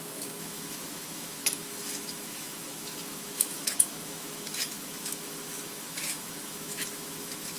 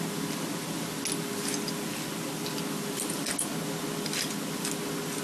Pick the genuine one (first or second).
second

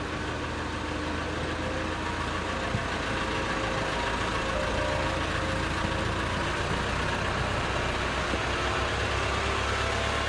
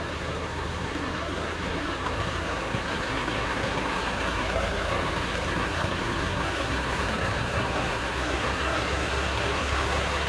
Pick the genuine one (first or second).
first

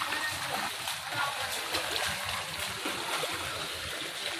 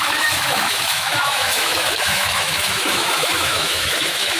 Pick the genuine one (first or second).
first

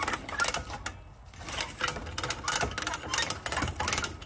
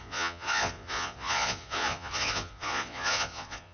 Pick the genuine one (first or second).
first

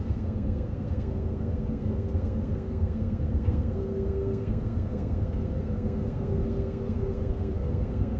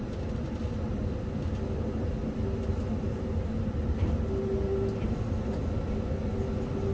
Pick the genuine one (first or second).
second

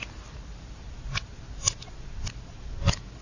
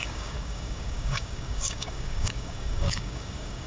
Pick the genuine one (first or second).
first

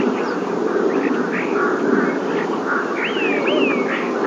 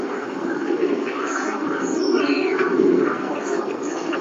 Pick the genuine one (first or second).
first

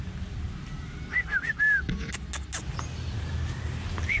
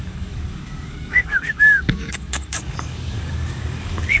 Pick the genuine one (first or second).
first